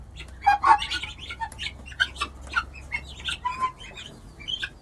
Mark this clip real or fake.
real